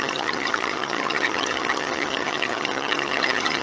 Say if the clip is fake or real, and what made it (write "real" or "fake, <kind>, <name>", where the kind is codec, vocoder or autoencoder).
fake, vocoder, HiFi-GAN